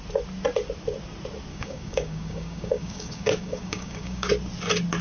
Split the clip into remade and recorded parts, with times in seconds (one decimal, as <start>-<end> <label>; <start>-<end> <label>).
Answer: 0.0-1.5 recorded; 1.5-4.3 remade; 4.3-5.0 recorded